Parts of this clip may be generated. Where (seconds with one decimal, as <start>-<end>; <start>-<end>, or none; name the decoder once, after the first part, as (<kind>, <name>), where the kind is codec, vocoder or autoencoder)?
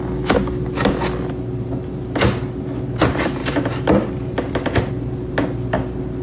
none